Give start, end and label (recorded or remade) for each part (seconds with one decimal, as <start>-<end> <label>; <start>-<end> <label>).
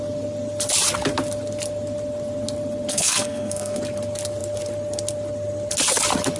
0.0-2.9 recorded; 2.9-3.8 remade; 3.8-6.4 recorded